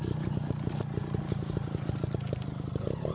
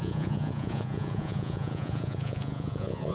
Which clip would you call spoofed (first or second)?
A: second